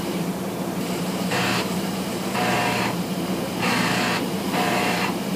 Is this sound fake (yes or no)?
yes